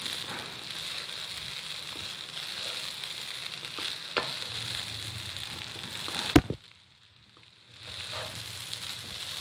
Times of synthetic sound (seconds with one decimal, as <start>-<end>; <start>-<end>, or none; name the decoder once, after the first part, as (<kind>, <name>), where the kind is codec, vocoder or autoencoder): none